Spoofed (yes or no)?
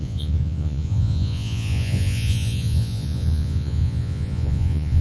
yes